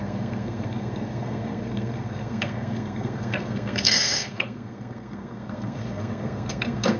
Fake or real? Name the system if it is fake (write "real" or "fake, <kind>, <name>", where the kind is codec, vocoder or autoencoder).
fake, codec, SNAC